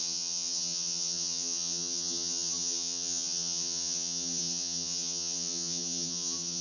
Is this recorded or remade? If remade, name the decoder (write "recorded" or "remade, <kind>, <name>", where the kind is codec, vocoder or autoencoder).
remade, vocoder, HiFi-GAN